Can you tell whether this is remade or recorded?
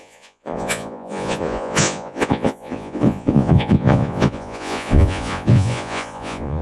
remade